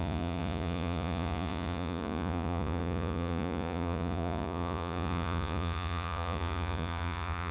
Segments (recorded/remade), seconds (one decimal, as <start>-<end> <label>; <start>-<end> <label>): 0.0-7.5 remade